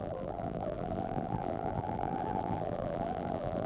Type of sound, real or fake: fake